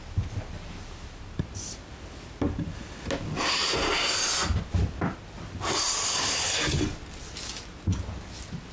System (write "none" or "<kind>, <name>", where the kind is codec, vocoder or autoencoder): none